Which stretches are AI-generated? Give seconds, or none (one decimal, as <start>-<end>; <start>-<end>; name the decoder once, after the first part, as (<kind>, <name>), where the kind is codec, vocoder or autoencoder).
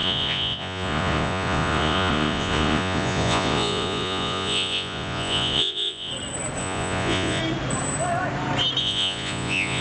0.0-6.1 (vocoder, Vocos); 6.6-7.4; 8.8-9.8